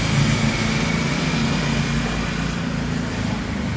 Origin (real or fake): real